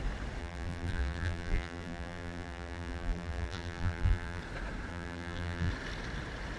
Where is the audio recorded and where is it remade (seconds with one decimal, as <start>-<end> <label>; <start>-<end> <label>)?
0.0-0.4 recorded; 0.4-4.4 remade; 4.4-4.9 recorded; 4.9-5.7 remade; 5.7-6.6 recorded